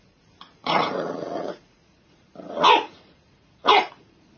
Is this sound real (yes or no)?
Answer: no